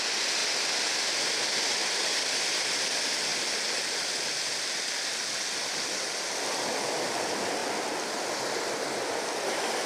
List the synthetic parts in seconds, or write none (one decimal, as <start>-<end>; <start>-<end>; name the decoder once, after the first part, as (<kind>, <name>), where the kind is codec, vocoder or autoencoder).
none